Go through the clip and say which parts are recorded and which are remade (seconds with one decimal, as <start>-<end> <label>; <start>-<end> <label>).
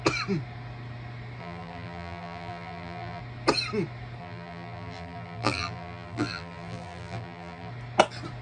0.0-1.4 recorded; 1.4-3.2 remade; 3.2-4.2 recorded; 4.2-7.7 remade; 7.7-8.4 recorded